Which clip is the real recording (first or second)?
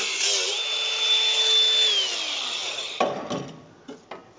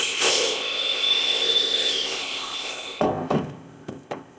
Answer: first